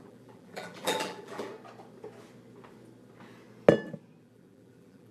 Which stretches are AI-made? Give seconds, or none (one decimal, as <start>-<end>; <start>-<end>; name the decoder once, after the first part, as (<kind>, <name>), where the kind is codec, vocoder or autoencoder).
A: 0.0-1.5 (vocoder, BigVGAN v2); 4.2-5.1